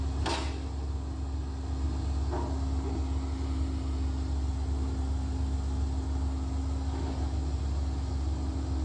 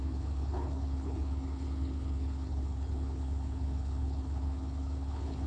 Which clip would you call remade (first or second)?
second